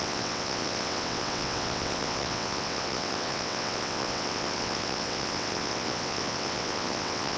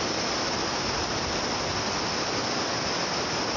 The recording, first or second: second